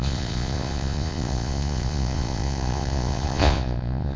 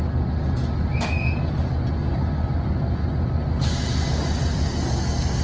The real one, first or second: second